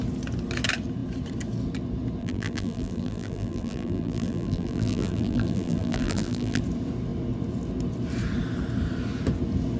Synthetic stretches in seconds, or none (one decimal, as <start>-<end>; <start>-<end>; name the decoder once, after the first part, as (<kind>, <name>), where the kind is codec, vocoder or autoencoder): 2.2-6.6 (vocoder, BigVGAN v2)